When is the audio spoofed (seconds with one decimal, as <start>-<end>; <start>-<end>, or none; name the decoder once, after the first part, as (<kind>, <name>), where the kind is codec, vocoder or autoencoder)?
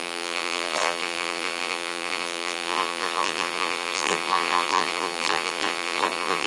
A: 0.0-6.5 (vocoder, BigVGAN v2)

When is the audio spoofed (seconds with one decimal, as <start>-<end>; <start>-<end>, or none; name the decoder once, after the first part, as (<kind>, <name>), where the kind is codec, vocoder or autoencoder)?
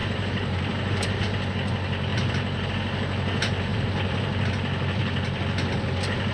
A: 0.0-1.2 (vocoder, BigVGAN v2); 2.1-2.7; 3.7-4.5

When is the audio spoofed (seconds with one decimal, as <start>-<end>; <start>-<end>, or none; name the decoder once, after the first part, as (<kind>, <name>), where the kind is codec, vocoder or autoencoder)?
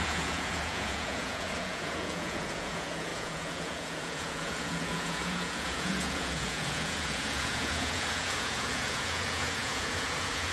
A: 0.0-10.5 (vocoder, Vocos)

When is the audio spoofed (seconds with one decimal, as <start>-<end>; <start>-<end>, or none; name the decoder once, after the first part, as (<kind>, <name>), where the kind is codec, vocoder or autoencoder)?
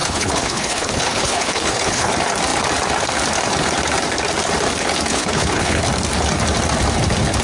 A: 0.0-2.1 (codec, HILCodec); 5.1-5.8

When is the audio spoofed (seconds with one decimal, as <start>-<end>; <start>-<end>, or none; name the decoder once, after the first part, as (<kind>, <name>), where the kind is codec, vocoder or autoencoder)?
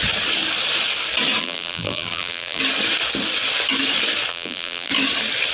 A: 1.4-2.6 (vocoder, BigVGAN v2); 4.3-4.9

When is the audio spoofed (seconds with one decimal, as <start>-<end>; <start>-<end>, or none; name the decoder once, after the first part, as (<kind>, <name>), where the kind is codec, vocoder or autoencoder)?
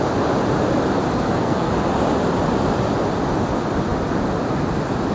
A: 1.1-1.7 (codec, SNAC)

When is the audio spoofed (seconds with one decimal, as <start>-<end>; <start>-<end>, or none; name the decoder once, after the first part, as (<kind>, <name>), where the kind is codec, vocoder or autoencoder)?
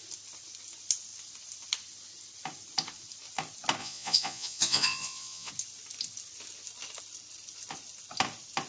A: 3.8-5.5 (vocoder, Vocos)